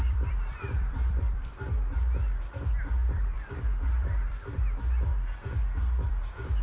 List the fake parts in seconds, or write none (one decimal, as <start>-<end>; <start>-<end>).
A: 0.0-1.5; 2.5-5.1; 6.1-6.6